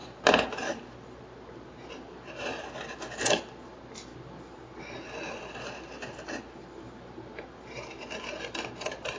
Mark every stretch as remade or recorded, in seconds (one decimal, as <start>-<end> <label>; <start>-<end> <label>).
0.0-9.2 recorded

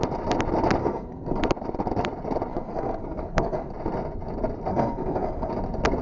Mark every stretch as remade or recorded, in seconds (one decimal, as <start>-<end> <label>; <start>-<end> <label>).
0.0-0.8 recorded; 0.8-1.4 remade; 1.4-2.5 recorded; 2.5-3.7 remade; 3.7-4.7 recorded; 4.7-5.5 remade; 5.5-6.0 recorded

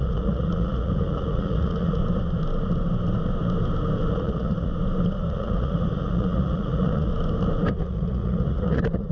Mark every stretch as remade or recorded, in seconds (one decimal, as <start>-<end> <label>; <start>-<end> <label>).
0.0-2.0 remade; 2.0-4.1 recorded; 4.1-4.7 remade; 4.7-5.3 recorded; 5.3-7.1 remade; 7.1-7.8 recorded; 7.8-9.1 remade

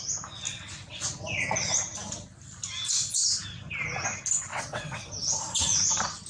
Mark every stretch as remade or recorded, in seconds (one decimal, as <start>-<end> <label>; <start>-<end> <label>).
0.0-4.5 recorded; 4.5-5.1 remade; 5.1-6.3 recorded

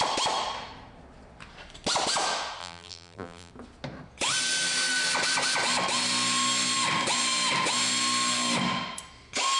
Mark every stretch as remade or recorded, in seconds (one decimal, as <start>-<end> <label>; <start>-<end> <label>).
0.0-2.6 recorded; 2.6-3.5 remade; 3.5-9.6 recorded

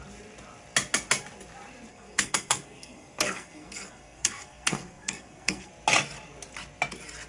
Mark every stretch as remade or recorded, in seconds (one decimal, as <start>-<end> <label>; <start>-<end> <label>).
0.0-1.9 recorded; 1.9-5.7 remade; 5.7-7.3 recorded

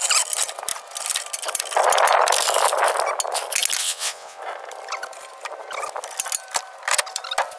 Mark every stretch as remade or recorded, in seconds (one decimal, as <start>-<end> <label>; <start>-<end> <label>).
0.0-3.8 recorded; 3.8-4.4 remade; 4.4-7.6 recorded